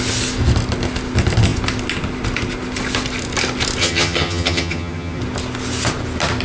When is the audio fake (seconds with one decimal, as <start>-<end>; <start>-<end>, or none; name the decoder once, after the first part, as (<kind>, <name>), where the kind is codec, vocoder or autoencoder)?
3.8-5.2 (vocoder, HiFi-GAN)